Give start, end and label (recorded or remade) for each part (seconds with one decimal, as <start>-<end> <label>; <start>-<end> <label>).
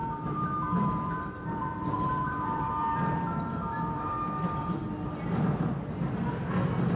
0.0-4.1 remade; 4.1-7.0 recorded